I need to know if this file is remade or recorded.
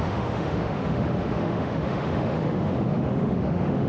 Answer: remade